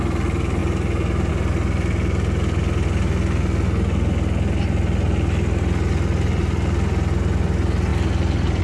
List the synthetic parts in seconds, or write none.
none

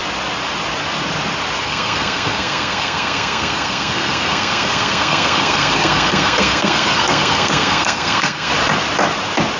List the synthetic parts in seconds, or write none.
1.6-8.5 (codec, SNAC)

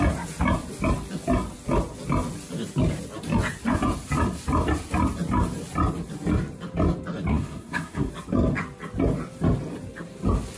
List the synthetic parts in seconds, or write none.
7.3-8.1 (codec, SNAC)

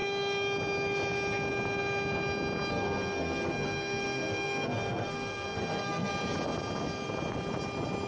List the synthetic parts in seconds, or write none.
2.7-6.1 (codec, SNAC)

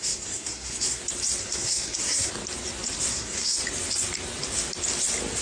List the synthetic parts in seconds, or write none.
0.0-1.0 (codec, SNAC); 1.4-2.3; 3.1-3.6

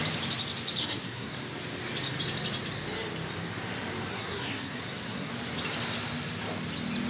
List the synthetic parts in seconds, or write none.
0.8-1.4 (codec, SNAC); 4.1-5.3

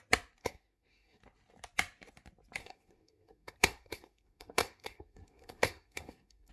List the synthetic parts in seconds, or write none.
0.4-1.2 (codec, SNAC); 2.6-6.5